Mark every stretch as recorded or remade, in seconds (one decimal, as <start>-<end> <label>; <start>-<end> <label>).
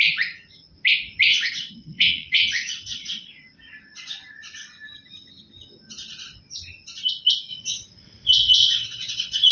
0.0-1.3 recorded; 1.3-3.3 remade; 3.3-7.5 recorded; 7.5-9.5 remade